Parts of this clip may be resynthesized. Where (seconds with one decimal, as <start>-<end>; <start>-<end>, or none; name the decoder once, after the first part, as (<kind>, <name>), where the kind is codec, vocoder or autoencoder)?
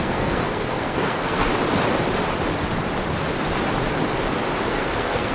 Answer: 0.0-1.5 (codec, SNAC); 4.7-5.3